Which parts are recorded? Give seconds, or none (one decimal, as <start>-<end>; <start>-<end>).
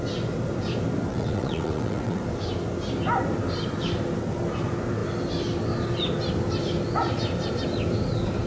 0.0-1.1; 2.2-8.5